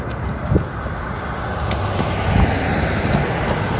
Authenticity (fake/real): real